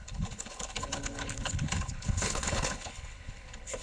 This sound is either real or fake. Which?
fake